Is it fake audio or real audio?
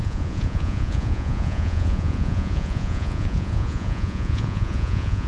fake